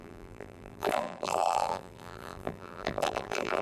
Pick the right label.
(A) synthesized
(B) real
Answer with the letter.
A